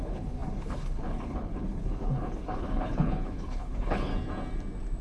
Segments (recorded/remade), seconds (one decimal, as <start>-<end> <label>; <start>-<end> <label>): 0.0-4.1 remade; 4.1-5.0 recorded

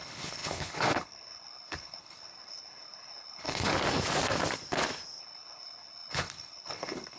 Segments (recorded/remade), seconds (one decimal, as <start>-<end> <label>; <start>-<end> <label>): 0.0-3.7 remade; 3.7-5.2 recorded; 5.2-7.2 remade

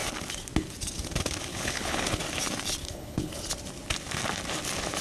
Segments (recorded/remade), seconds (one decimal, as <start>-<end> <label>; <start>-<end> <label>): 0.0-1.5 recorded; 1.5-2.2 remade; 2.2-2.8 recorded; 2.8-3.4 remade; 3.4-5.0 recorded

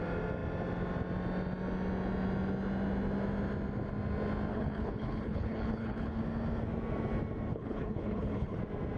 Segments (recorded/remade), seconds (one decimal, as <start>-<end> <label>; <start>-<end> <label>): 0.0-4.5 recorded; 4.5-6.2 remade; 6.2-7.5 recorded; 7.5-8.6 remade; 8.6-9.0 recorded